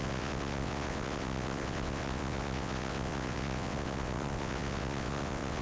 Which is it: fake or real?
fake